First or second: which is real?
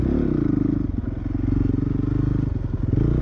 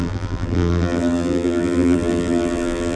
first